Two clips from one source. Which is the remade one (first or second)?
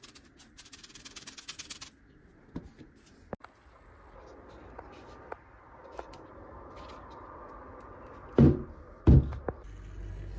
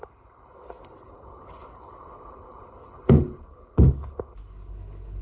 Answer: second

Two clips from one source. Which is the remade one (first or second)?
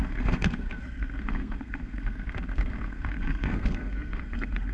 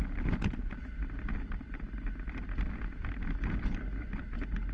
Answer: first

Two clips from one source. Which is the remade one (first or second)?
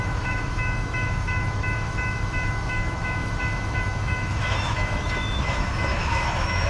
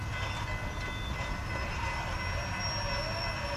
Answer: first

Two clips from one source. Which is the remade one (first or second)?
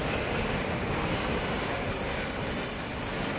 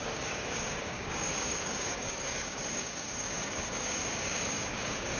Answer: second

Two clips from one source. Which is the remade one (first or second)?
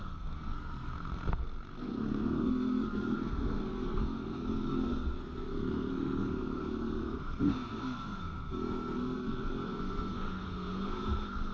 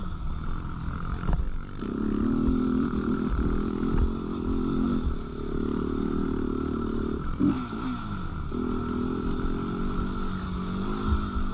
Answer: first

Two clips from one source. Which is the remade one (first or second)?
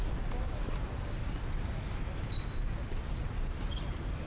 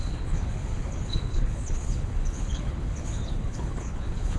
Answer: second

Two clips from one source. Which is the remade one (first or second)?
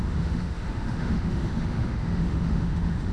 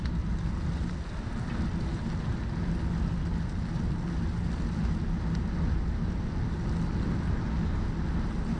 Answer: first